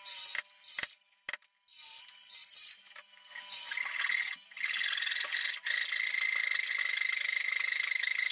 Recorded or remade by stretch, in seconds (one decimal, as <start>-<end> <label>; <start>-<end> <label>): 0.0-2.4 recorded; 2.4-6.8 remade; 6.8-8.3 recorded